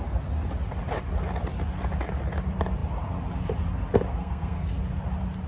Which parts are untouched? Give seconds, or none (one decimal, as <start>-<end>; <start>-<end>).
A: 0.0-4.1; 4.7-5.5